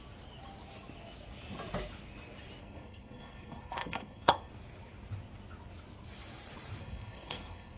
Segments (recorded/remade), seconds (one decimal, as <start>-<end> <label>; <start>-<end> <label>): 0.0-2.6 recorded; 2.6-4.5 remade; 4.5-6.8 recorded; 6.8-7.8 remade